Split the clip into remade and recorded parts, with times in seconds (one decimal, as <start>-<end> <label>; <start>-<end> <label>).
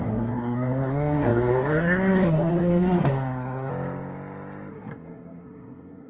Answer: 0.0-3.7 remade; 3.7-4.7 recorded; 4.7-6.1 remade